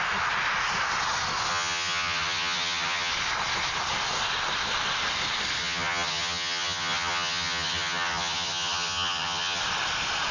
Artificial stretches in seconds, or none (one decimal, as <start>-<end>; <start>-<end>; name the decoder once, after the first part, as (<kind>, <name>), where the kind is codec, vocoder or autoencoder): 1.5-3.1 (vocoder, HiFi-GAN); 5.6-9.6